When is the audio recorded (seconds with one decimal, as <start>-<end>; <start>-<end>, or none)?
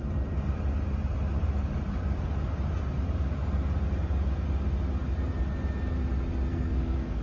0.0-6.5